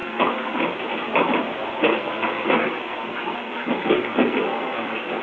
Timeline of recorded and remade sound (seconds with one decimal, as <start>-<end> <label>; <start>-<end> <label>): 0.0-0.6 remade; 0.6-1.8 recorded; 1.8-5.2 remade